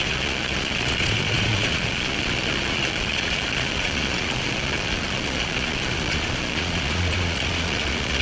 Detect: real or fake fake